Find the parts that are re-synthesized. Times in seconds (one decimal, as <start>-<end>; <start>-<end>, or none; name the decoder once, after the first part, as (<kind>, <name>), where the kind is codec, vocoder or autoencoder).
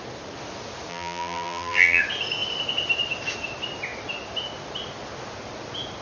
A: 0.9-2.0 (vocoder, BigVGAN v2)